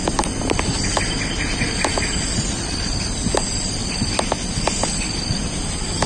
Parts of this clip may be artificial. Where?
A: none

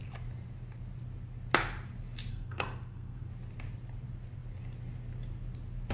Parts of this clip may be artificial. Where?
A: 2.3-3.3 (codec, SNAC)